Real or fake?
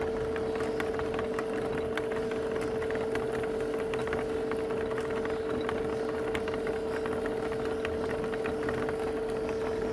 real